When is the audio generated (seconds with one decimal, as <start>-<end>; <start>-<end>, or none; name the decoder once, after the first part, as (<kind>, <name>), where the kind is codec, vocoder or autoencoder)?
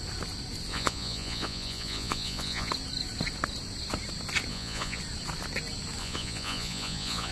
0.7-2.7 (vocoder, Vocos); 4.5-5.0; 6.0-7.3